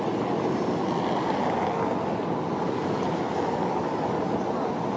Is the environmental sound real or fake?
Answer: real